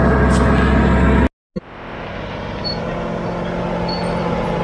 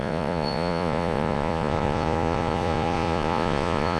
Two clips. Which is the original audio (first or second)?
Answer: first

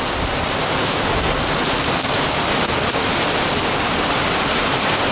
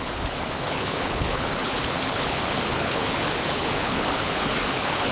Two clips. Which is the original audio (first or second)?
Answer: first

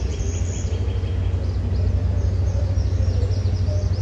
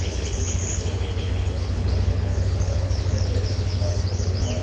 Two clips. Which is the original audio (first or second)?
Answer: first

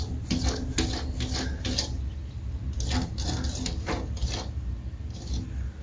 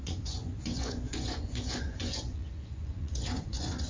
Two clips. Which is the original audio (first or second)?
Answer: first